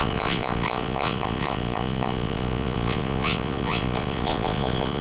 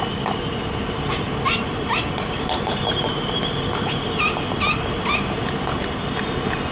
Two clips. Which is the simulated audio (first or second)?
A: first